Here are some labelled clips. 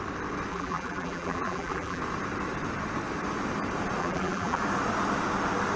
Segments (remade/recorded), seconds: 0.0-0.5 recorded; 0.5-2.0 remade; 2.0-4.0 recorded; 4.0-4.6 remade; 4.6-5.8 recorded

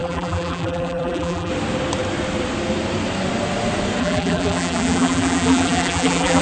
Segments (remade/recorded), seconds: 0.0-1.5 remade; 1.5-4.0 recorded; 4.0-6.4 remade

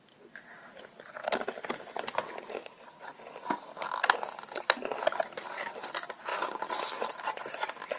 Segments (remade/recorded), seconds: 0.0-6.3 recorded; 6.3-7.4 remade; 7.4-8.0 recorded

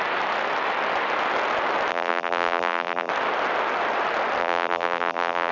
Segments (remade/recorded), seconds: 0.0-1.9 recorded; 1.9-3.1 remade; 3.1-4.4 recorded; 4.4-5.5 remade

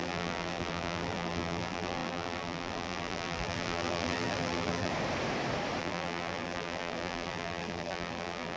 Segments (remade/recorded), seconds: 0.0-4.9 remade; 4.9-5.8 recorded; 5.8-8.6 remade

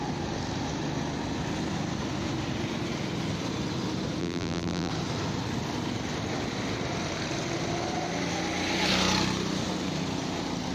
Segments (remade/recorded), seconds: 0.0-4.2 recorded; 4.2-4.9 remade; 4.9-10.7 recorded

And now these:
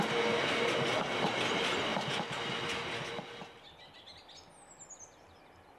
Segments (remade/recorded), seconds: 0.0-5.8 recorded